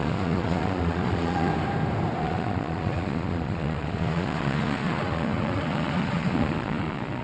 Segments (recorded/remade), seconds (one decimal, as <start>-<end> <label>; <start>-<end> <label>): 0.0-1.5 remade; 1.5-2.2 recorded; 2.2-7.2 remade